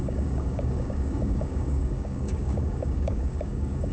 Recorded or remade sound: remade